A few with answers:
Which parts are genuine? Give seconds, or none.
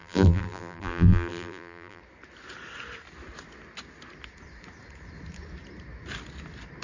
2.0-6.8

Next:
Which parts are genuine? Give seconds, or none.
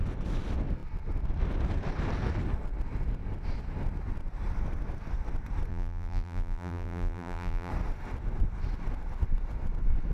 0.0-5.7; 7.7-10.1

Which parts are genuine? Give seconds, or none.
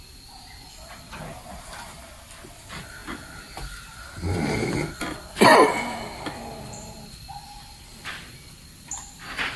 0.0-9.6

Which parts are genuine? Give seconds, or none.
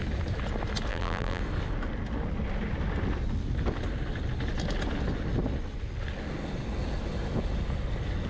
0.0-0.9; 1.4-8.3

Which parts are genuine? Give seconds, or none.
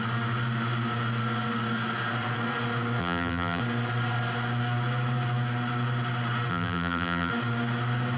0.0-3.0; 3.6-6.5; 7.3-8.2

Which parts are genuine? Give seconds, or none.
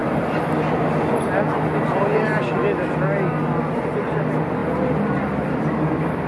0.0-2.1; 2.6-6.3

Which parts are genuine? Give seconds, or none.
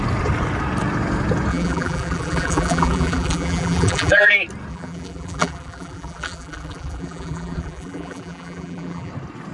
0.0-1.5; 4.3-4.7; 9.1-9.5